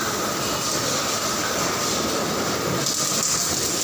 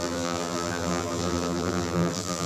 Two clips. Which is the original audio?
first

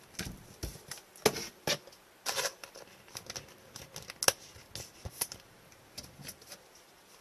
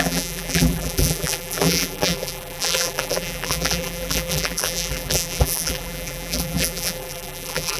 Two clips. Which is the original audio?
first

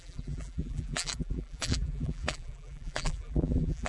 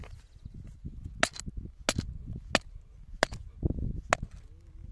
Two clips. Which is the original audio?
second